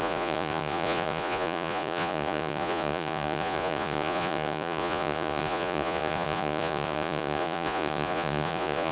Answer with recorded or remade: remade